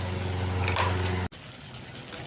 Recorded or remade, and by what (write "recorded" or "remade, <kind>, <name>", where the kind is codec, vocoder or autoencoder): recorded